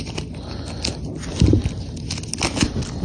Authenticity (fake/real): real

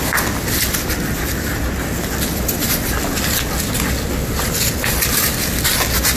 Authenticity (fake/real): real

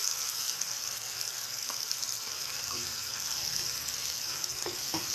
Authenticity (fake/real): fake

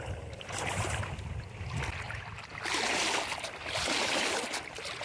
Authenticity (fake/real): real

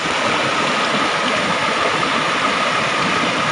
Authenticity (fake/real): real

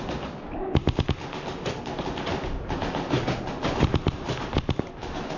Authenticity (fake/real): real